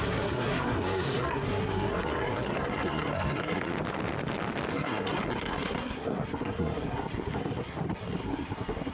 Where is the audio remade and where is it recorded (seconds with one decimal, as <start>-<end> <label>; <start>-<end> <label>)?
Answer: 0.0-3.7 remade; 3.7-4.7 recorded; 4.7-8.9 remade